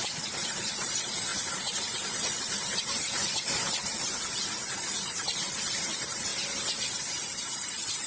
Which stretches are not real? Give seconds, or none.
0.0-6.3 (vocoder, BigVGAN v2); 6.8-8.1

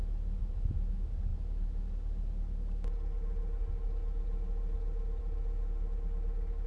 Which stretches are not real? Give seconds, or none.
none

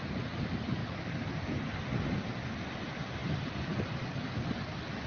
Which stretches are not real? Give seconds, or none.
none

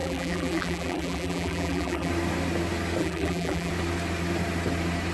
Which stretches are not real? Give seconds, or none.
0.0-2.1 (vocoder, BigVGAN v2); 3.0-3.7

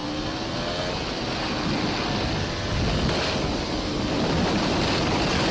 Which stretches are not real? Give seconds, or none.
none